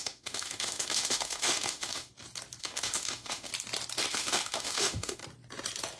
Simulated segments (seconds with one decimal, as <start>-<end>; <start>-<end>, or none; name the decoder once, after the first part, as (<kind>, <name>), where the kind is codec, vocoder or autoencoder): 0.0-2.1 (autoencoder, DAC-VAE); 2.6-3.5; 4.1-5.2